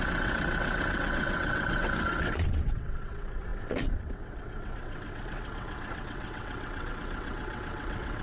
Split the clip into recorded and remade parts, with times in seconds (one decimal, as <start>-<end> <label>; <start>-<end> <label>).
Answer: 0.0-8.2 remade